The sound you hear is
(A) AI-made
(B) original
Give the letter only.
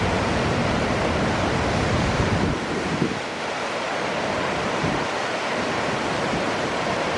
A